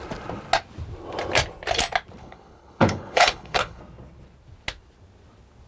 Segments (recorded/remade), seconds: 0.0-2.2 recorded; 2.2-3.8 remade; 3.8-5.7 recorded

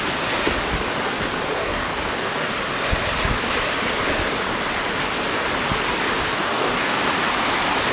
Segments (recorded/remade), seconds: 0.0-1.6 recorded; 1.6-2.5 remade; 2.5-6.4 recorded; 6.4-7.1 remade; 7.1-7.9 recorded

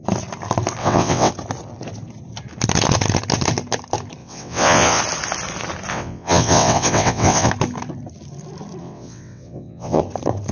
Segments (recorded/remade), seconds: 0.0-0.8 recorded; 0.8-1.3 remade; 1.3-4.2 recorded; 4.2-5.0 remade; 5.0-5.9 recorded; 5.9-7.5 remade; 7.5-8.8 recorded; 8.8-10.0 remade; 10.0-10.5 recorded

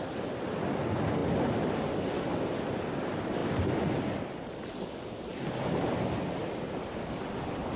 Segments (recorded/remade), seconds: 0.0-7.8 recorded